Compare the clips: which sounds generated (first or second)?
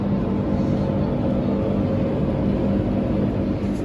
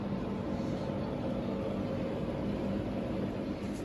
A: second